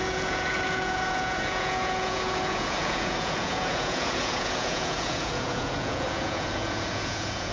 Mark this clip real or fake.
fake